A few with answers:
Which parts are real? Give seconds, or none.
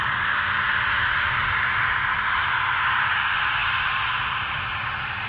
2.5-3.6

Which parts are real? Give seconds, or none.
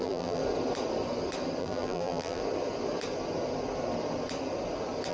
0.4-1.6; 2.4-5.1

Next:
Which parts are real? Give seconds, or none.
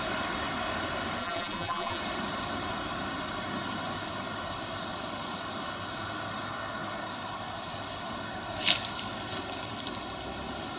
0.0-1.2; 2.0-10.8